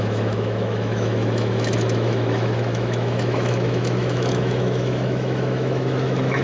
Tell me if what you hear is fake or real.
fake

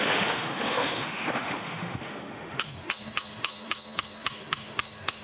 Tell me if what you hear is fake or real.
fake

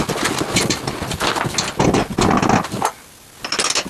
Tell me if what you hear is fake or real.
real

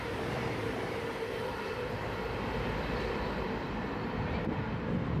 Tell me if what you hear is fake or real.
real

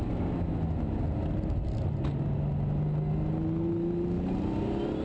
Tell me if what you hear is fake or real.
real